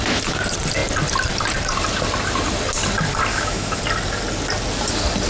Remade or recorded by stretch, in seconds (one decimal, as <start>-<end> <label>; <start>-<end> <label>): 0.0-3.3 recorded; 3.3-3.8 remade; 3.8-5.3 recorded